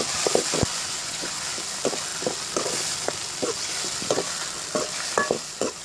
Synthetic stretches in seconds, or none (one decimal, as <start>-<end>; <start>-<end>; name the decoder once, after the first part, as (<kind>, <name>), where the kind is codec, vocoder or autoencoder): 0.7-1.4 (vocoder, Vocos)